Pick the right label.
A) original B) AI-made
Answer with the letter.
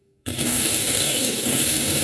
B